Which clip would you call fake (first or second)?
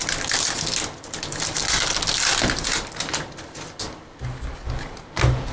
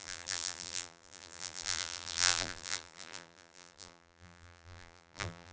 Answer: second